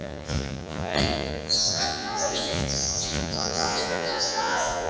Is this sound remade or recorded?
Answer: remade